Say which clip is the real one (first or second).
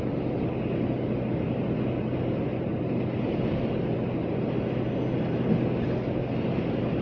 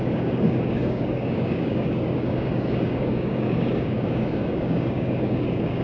first